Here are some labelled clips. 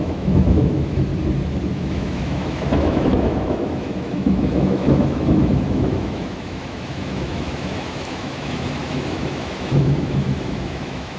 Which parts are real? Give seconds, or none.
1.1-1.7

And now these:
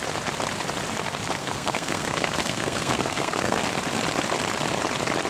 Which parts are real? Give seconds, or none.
0.0-1.4; 3.6-5.3

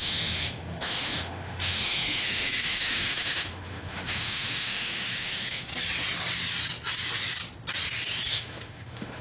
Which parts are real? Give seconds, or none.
5.7-8.3

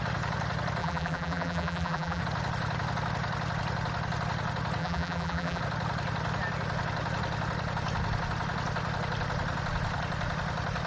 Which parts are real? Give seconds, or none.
0.0-0.8; 2.2-4.8; 5.6-10.9

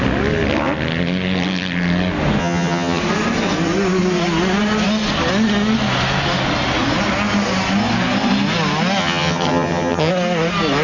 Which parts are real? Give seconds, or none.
0.0-2.4; 3.0-9.0; 10.1-10.8

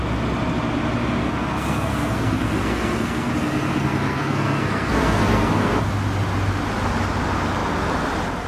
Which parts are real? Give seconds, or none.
0.0-1.2; 3.3-3.7; 5.8-8.5